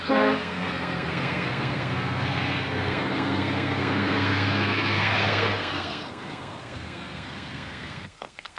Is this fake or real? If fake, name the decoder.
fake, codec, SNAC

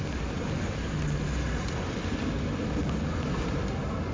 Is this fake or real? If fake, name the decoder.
real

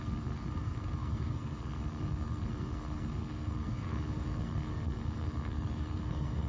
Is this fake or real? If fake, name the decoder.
fake, codec, SNAC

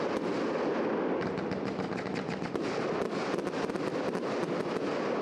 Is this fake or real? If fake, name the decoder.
real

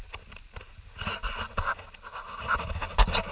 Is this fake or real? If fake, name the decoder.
real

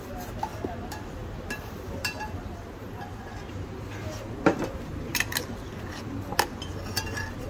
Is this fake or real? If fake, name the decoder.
real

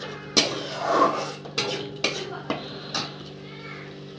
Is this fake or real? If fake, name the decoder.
real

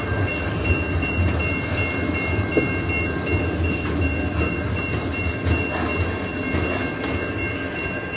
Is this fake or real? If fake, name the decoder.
real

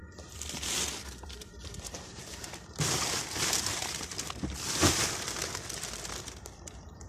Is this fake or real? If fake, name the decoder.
fake, vocoder, BigVGAN v2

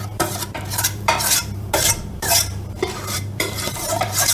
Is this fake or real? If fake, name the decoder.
fake, vocoder, BigVGAN v2